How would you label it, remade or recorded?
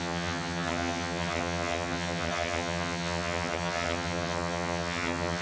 remade